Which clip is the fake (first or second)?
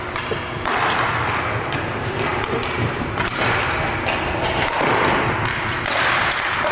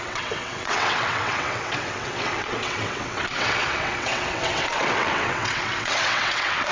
second